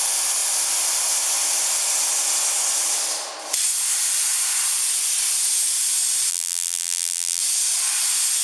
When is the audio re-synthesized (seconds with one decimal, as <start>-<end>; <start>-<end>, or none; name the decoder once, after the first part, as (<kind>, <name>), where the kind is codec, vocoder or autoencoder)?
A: 6.3-7.4 (vocoder, BigVGAN v2)